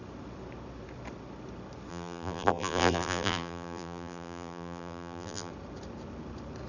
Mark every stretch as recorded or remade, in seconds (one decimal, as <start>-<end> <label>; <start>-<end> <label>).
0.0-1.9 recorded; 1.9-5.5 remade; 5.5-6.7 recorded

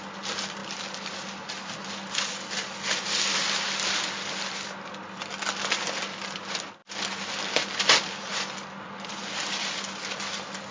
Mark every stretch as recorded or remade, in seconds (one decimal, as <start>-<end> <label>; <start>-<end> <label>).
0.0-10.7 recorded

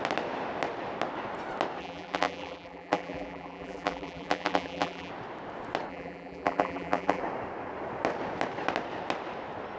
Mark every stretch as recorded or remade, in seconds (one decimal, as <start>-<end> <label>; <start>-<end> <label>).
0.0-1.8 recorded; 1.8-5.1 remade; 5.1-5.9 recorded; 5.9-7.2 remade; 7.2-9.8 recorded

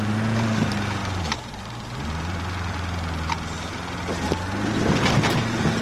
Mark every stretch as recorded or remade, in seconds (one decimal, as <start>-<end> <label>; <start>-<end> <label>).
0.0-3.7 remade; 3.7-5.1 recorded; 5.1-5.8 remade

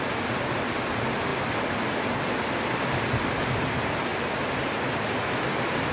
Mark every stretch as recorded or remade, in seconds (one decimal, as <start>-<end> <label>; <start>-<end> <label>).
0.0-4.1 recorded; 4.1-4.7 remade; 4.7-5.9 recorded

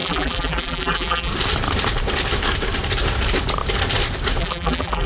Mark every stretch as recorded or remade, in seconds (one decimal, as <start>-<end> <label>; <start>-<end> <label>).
0.0-1.3 remade; 1.3-4.4 recorded; 4.4-5.1 remade

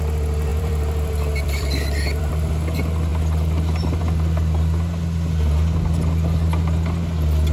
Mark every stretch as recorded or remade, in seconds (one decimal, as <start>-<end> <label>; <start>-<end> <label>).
0.0-0.5 recorded; 0.5-2.5 remade; 2.5-7.5 recorded